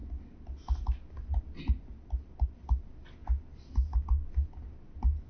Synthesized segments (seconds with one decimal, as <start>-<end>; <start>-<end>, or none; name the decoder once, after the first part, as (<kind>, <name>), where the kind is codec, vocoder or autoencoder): none